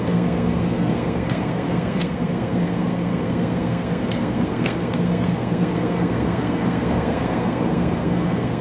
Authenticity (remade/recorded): remade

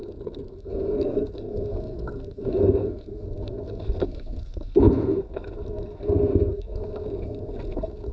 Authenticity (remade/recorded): remade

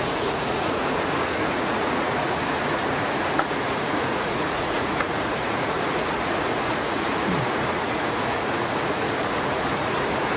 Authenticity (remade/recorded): remade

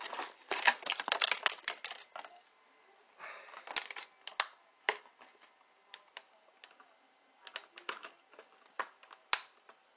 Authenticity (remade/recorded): recorded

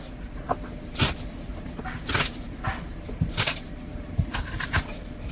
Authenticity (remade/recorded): recorded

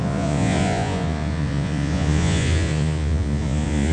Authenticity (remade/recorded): remade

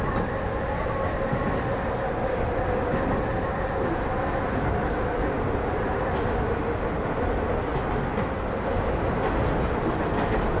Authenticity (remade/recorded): recorded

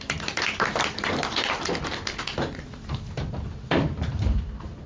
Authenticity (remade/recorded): remade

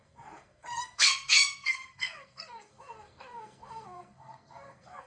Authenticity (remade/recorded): remade